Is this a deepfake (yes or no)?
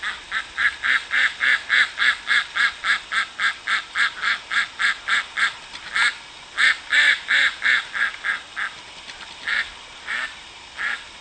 no